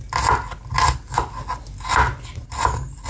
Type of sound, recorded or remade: recorded